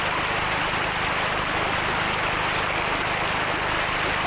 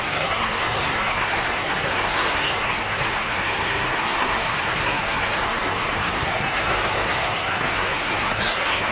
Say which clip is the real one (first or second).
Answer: first